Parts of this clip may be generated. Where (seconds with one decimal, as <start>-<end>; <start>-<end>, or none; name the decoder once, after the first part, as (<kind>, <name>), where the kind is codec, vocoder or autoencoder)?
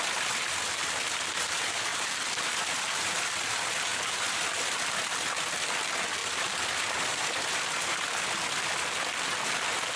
1.9-3.1 (vocoder, BigVGAN v2); 6.2-8.2